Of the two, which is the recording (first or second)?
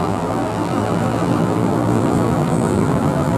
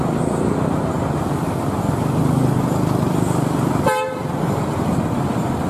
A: second